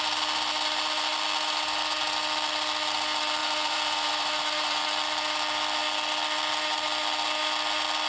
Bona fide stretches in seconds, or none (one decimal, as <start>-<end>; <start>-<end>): 0.0-3.4; 4.8-8.1